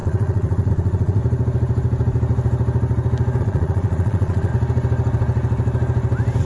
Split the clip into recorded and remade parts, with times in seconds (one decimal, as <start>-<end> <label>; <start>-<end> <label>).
0.0-1.2 remade; 1.2-3.4 recorded; 3.4-4.5 remade; 4.5-6.4 recorded